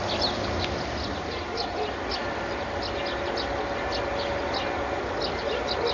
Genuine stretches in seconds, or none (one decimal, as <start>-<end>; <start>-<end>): 0.0-2.2; 3.0-5.9